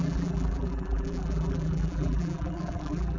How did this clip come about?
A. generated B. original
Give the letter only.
A